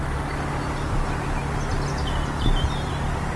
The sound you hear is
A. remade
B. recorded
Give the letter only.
B